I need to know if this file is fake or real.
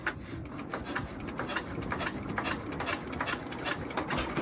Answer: real